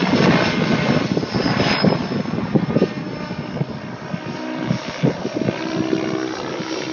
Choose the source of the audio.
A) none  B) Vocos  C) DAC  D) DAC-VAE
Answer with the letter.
A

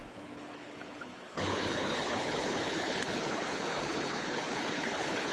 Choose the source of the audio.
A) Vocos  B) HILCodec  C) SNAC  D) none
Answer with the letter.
B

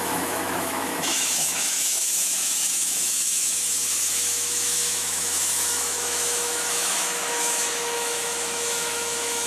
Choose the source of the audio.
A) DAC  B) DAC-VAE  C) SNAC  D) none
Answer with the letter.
B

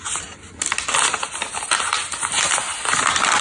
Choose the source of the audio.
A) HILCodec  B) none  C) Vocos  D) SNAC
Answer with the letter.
B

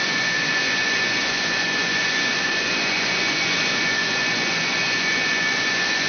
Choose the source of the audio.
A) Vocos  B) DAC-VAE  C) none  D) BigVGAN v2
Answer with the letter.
A